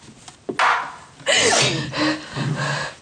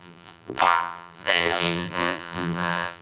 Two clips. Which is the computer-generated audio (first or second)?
second